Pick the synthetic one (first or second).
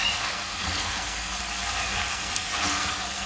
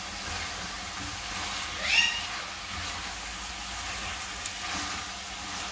first